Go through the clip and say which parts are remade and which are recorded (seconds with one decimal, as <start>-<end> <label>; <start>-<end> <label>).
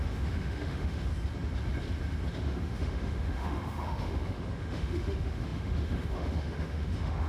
0.0-1.1 remade; 1.1-2.3 recorded; 2.3-7.3 remade